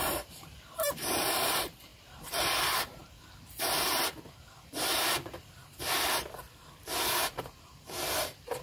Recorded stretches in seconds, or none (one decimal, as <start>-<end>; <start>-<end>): none